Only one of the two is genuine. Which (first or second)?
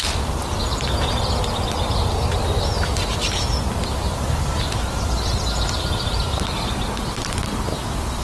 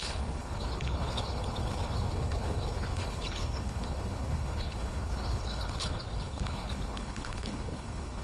first